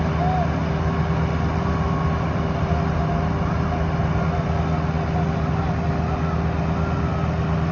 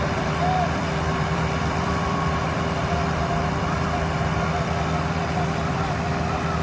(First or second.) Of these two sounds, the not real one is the second